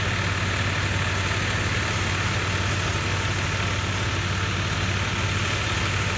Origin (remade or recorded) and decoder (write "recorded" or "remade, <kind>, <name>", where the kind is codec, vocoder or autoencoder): recorded